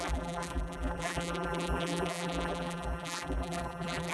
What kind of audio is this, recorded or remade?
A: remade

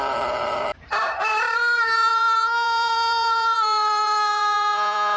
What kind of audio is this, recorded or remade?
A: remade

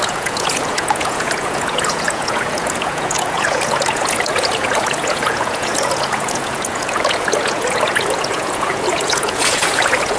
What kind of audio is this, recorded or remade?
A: remade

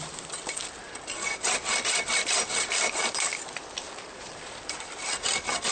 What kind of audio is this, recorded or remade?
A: remade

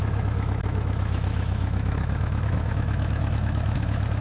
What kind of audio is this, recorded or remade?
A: remade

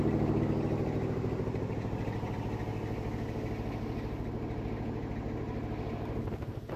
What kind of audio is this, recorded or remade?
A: recorded